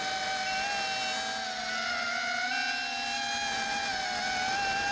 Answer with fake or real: real